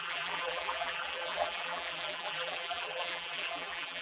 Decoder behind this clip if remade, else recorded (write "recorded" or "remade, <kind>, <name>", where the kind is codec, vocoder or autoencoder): remade, vocoder, BigVGAN v2